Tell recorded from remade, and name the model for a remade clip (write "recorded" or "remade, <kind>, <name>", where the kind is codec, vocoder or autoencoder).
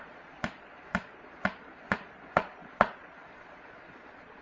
remade, vocoder, Vocos